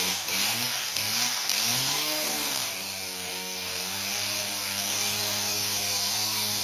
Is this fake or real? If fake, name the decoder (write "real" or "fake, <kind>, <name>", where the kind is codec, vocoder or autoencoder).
fake, codec, DAC